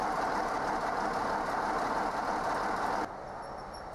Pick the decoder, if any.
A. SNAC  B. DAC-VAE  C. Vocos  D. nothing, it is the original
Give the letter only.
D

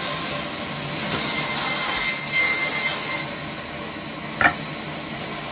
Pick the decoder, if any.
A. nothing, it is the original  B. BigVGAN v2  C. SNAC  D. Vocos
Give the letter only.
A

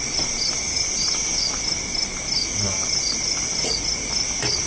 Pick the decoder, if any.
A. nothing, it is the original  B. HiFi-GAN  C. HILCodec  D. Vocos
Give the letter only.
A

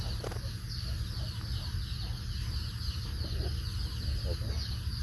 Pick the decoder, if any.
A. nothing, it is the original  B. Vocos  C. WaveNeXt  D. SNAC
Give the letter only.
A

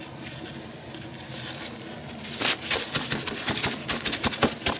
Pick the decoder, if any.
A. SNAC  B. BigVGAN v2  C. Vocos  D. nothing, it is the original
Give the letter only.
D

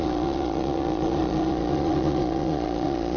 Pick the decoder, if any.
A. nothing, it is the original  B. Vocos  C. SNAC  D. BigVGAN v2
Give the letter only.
B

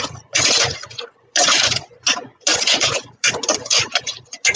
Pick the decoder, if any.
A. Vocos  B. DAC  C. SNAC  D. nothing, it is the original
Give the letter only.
A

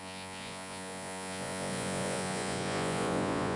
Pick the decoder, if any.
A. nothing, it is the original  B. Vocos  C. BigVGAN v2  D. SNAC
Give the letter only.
B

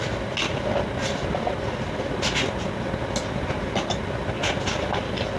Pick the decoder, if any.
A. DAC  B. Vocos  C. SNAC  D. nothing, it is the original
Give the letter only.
D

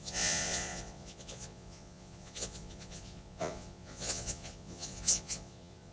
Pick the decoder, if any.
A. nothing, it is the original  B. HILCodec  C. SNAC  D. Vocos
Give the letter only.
D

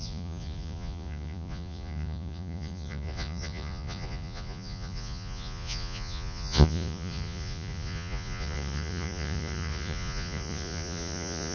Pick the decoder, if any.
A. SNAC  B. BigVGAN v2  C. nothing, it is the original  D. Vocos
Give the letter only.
D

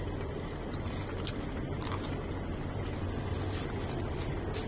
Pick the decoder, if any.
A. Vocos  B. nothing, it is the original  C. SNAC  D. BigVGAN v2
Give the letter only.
B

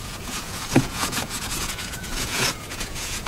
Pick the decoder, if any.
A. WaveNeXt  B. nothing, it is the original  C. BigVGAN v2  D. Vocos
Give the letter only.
D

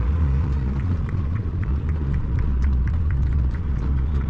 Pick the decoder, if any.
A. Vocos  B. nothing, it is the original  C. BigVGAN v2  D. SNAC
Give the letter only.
A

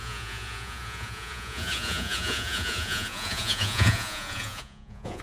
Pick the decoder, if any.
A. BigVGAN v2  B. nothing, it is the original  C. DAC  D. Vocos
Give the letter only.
D